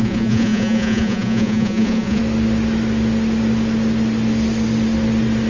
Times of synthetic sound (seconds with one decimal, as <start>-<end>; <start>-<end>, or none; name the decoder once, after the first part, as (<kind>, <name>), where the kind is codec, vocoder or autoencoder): 0.0-2.2 (vocoder, Vocos)